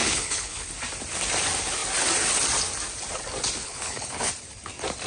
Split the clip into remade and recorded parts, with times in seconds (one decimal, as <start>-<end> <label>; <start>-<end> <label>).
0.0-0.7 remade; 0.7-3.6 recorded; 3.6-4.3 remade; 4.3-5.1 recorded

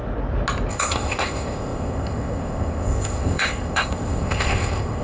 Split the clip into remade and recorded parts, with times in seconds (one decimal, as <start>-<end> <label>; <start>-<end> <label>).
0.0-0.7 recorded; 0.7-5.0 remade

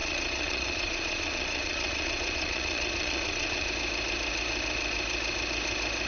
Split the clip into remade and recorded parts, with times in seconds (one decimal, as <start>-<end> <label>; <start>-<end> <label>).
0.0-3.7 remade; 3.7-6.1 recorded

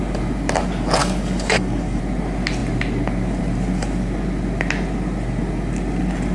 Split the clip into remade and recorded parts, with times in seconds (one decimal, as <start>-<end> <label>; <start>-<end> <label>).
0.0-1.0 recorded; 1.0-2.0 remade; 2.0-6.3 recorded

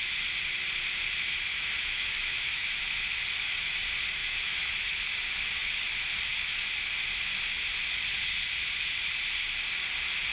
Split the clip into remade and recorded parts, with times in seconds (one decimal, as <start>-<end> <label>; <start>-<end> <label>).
0.0-1.5 recorded; 1.5-2.8 remade; 2.8-4.2 recorded; 4.2-4.7 remade; 4.7-10.3 recorded

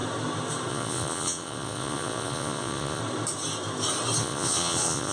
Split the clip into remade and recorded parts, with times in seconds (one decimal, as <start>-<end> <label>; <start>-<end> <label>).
0.0-0.7 recorded; 0.7-3.0 remade; 3.0-4.2 recorded; 4.2-5.1 remade